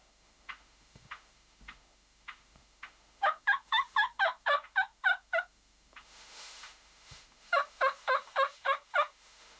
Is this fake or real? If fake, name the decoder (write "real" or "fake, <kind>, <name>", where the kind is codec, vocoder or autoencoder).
fake, autoencoder, DAC-VAE